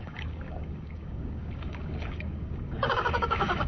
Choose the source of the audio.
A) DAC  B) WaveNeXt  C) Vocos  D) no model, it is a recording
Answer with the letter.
A